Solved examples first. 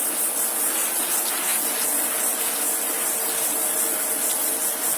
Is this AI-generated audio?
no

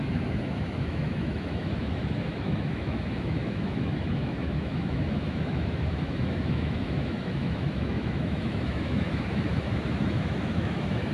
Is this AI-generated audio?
yes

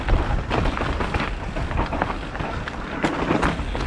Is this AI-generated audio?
no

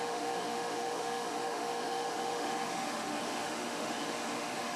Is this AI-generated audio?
yes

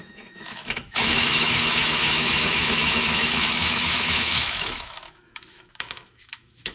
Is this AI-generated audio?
yes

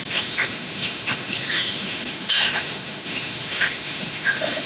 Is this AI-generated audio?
yes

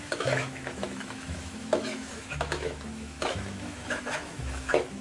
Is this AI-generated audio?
yes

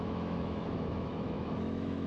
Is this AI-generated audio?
yes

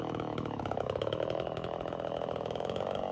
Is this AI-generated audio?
yes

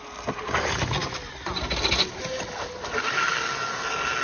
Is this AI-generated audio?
no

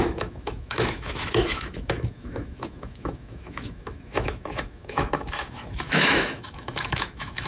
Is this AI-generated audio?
yes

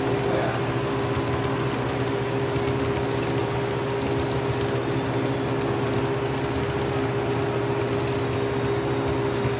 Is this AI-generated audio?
no